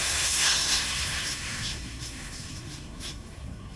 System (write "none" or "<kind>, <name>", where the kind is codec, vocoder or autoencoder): codec, SNAC